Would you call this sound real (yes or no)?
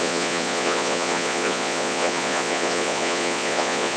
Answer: no